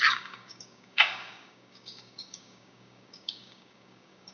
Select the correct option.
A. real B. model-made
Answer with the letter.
B